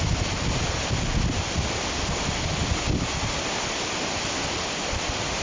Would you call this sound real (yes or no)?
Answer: yes